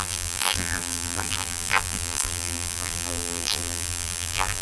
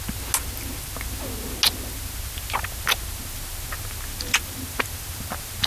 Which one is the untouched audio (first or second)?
second